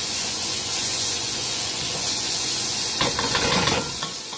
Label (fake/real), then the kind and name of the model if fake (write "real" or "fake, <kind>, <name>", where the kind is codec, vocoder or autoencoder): fake, vocoder, Vocos